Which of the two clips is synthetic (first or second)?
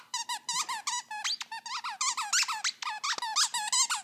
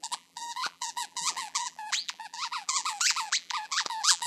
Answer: second